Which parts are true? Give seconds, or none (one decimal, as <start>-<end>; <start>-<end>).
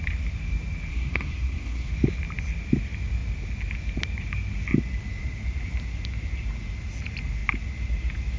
0.0-0.9; 1.9-8.4